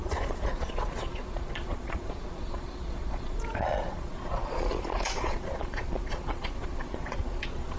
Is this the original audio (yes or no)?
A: no